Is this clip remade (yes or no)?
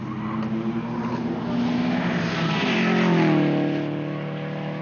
no